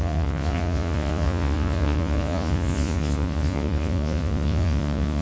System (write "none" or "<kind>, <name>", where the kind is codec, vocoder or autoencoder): vocoder, Vocos